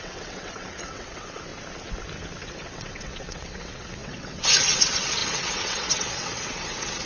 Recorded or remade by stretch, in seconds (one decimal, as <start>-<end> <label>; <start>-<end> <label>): 0.0-1.5 remade; 1.5-2.4 recorded; 2.4-7.1 remade